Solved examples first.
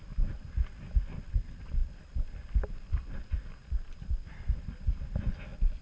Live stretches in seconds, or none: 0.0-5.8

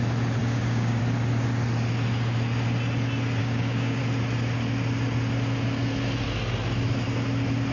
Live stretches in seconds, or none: 0.0-0.4; 1.0-3.4; 4.0-7.7

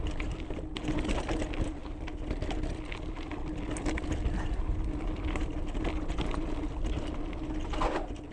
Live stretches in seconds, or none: 0.0-8.3

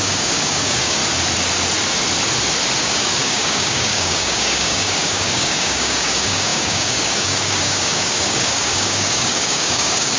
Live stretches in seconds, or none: 1.0-2.8

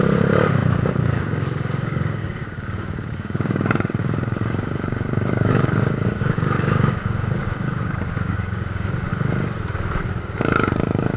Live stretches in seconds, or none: 9.1-10.2